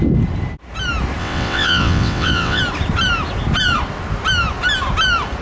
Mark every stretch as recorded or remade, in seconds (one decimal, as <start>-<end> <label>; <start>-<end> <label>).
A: 0.0-1.2 recorded; 1.2-2.6 remade; 2.6-5.4 recorded